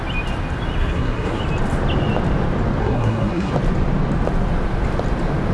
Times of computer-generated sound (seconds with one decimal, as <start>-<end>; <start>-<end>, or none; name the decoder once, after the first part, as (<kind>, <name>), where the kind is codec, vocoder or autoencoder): 0.8-1.4 (codec, SNAC); 2.8-3.5